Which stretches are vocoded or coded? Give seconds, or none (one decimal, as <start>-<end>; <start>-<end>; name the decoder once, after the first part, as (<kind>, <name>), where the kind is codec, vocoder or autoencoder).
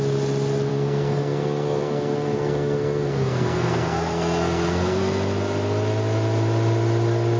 0.7-5.0 (codec, SNAC)